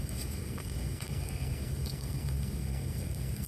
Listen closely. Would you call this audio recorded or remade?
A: remade